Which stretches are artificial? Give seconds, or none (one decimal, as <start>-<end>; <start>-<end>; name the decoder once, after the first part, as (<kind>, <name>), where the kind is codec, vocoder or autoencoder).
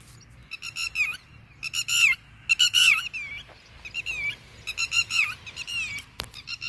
none